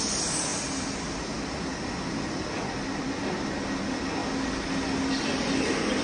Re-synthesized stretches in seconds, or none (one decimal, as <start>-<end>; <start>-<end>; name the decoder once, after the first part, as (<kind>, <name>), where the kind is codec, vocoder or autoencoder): none